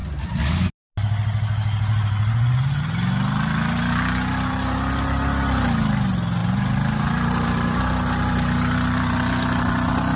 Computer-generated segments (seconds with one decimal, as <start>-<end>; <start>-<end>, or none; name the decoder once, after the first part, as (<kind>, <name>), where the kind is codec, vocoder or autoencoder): 6.4-7.8 (vocoder, BigVGAN v2)